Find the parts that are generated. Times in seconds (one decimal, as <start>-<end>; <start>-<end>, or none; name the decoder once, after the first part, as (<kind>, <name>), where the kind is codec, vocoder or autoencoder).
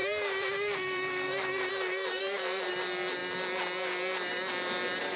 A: 0.0-1.7 (vocoder, BigVGAN v2); 2.2-2.7